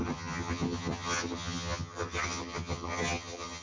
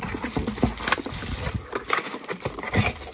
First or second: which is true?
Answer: second